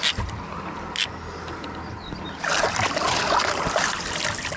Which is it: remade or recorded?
recorded